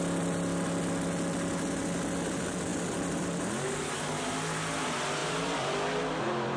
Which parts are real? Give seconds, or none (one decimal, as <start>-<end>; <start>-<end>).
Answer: 0.0-5.2